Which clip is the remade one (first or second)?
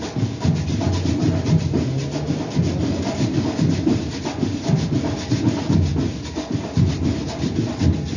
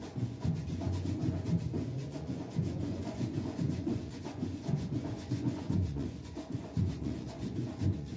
second